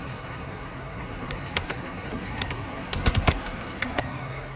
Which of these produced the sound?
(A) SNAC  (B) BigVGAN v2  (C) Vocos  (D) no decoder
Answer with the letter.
A